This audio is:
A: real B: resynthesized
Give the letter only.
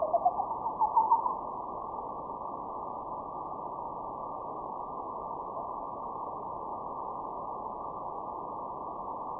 A